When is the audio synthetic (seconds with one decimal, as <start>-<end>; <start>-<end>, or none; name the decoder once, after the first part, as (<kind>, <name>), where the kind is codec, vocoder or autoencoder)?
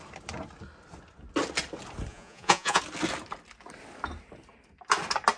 2.1-2.8 (vocoder, Vocos)